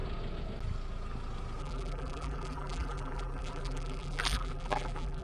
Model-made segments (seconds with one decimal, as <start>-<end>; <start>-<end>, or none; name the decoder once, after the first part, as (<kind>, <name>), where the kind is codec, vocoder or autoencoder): 1.6-5.2 (vocoder, BigVGAN v2)